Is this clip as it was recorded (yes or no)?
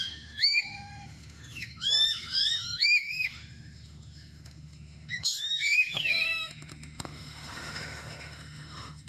no